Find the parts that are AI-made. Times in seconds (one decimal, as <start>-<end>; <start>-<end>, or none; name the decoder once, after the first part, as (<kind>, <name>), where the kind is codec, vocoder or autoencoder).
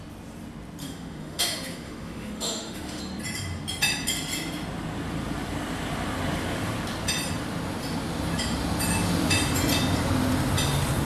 0.8-3.0 (autoencoder, DAC-VAE)